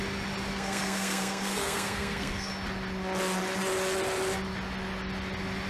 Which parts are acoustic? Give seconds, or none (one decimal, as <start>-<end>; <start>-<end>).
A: 0.0-0.5; 2.5-5.7